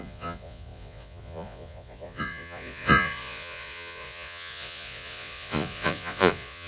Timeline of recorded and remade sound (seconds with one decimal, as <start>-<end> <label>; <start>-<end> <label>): 0.0-6.7 remade